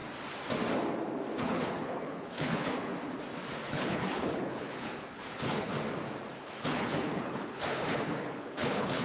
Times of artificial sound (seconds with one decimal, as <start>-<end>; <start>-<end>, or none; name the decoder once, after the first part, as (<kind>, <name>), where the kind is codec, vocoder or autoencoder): 1.4-2.9 (codec, HILCodec); 3.7-5.7; 6.4-9.0